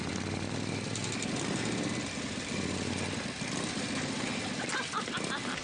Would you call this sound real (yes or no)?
yes